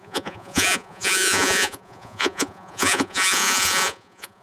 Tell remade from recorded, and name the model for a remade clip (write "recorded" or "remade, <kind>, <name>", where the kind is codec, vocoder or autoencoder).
remade, vocoder, Vocos